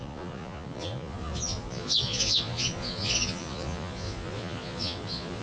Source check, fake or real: fake